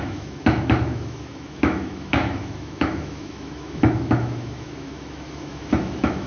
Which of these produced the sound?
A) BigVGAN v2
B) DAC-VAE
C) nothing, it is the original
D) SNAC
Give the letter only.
B